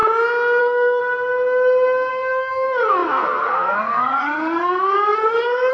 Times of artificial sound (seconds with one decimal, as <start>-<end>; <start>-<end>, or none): 0.6-1.0; 2.1-5.7